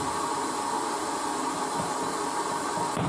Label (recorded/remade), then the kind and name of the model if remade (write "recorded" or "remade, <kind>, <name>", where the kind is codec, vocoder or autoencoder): recorded